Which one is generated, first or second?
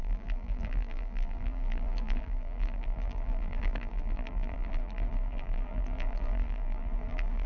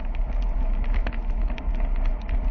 first